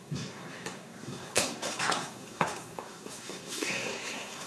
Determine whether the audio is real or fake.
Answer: fake